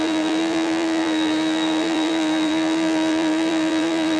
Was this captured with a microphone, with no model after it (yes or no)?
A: no